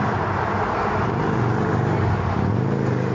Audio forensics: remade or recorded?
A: recorded